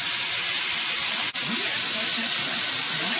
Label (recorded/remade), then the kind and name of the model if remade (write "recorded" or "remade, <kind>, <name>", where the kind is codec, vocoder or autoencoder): recorded